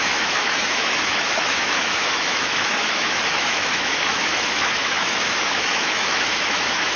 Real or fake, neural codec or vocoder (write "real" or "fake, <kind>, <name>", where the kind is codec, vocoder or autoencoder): fake, autoencoder, DAC-VAE